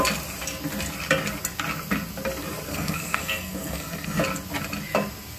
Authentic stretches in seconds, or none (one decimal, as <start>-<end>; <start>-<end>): 0.0-2.7; 4.2-5.4